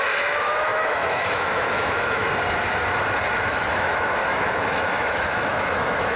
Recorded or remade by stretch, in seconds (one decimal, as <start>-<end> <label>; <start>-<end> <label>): 0.0-2.2 remade; 2.2-3.5 recorded; 3.5-6.2 remade